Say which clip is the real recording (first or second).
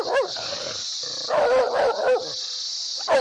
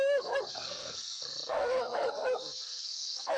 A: first